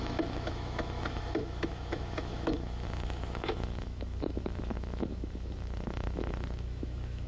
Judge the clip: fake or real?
fake